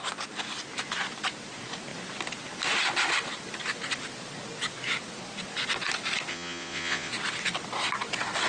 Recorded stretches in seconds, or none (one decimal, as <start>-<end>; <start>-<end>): 0.0-6.3; 7.1-8.5